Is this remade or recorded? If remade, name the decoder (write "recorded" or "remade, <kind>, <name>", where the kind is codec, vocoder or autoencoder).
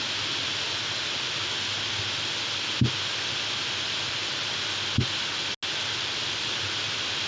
recorded